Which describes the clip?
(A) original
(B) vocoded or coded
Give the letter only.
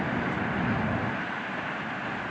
A